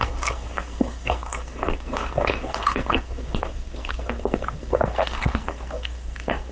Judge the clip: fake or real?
fake